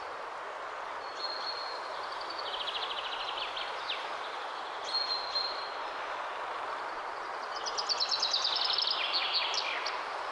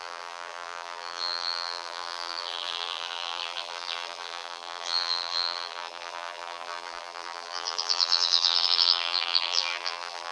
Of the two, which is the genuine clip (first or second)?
first